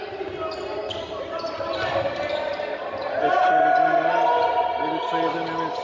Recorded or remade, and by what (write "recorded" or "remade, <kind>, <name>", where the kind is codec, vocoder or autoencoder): recorded